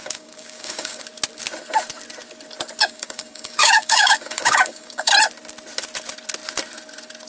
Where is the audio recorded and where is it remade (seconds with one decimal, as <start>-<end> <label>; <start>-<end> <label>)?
0.0-1.0 remade; 1.0-2.8 recorded; 2.8-5.1 remade; 5.1-7.3 recorded